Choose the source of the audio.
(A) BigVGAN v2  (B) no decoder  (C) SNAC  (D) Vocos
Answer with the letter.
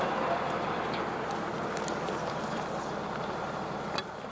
B